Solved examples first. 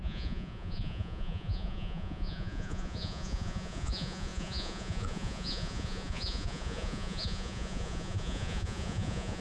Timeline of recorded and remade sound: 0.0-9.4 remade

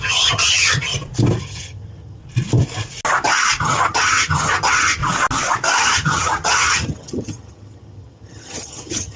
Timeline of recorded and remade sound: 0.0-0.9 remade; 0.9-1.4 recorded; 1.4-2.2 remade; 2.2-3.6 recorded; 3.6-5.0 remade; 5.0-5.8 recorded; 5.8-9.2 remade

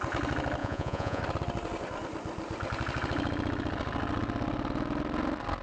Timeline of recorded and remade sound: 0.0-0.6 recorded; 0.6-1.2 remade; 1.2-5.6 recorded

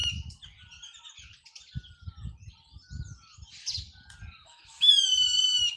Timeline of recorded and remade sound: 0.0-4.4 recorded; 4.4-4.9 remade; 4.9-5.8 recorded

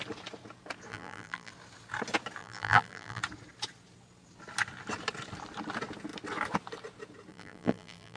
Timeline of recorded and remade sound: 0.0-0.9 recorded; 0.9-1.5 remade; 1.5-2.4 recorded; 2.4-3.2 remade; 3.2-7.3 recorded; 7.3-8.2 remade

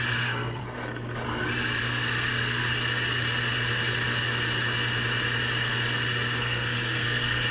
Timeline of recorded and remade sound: 0.0-0.6 remade; 0.6-1.8 recorded; 1.8-2.6 remade; 2.6-6.4 recorded; 6.4-7.5 remade